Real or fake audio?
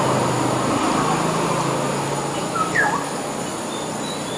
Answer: real